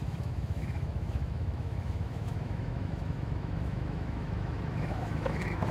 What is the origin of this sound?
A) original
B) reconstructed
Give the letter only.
B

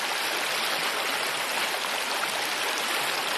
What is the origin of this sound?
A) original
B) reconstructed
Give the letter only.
A